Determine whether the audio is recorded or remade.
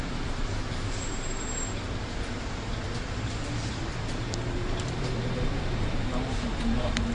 remade